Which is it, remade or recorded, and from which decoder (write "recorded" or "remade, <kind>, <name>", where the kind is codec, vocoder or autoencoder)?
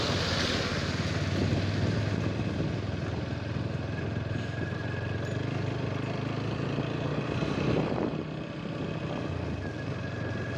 recorded